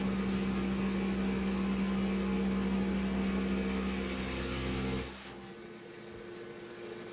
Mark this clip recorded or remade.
recorded